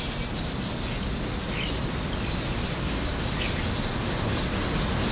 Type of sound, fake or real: real